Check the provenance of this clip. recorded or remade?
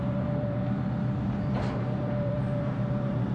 remade